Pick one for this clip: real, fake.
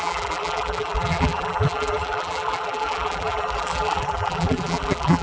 fake